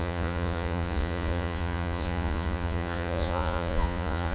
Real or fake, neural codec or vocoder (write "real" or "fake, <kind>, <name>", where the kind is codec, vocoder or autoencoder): fake, vocoder, Vocos